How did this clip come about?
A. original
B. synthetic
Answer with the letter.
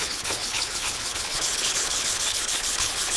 B